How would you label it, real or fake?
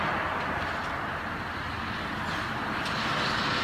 real